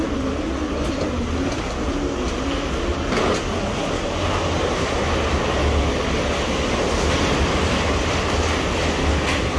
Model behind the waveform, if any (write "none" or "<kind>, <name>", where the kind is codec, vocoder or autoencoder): none